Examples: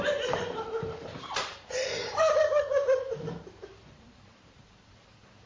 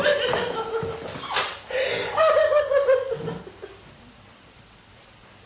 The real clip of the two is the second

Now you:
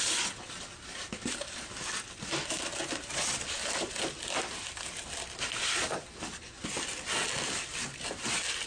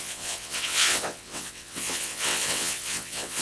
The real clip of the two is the first